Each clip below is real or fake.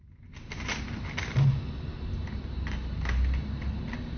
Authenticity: real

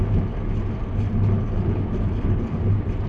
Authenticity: real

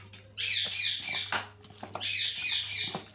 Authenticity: real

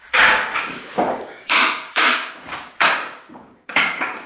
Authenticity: fake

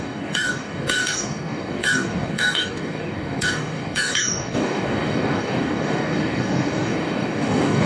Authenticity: fake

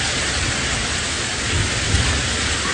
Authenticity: real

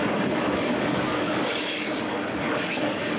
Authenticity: fake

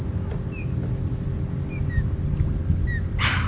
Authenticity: real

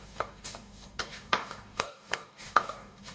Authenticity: fake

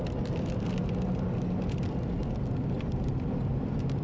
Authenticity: real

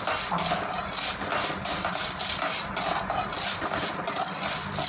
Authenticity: real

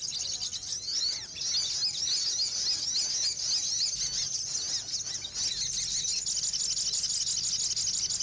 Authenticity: real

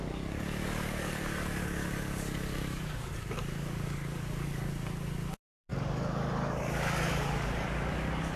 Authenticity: fake